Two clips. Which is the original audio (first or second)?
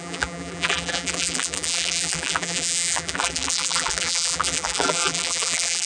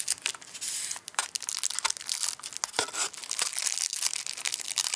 second